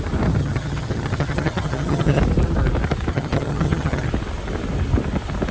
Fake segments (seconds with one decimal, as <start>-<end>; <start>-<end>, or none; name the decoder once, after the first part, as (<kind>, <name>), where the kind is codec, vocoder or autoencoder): 0.4-2.2 (vocoder, HiFi-GAN); 3.1-4.1